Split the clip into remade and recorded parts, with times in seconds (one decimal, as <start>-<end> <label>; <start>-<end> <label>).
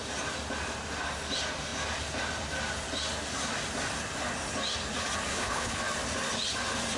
0.0-5.3 recorded; 5.3-5.8 remade; 5.8-7.0 recorded